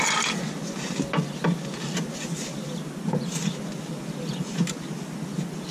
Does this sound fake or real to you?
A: real